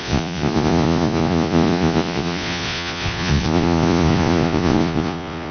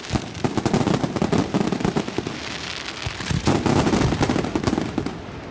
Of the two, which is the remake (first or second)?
first